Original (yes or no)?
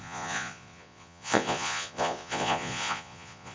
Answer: no